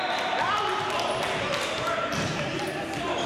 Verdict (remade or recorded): recorded